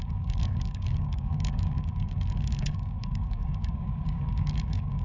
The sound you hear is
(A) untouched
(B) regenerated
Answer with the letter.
B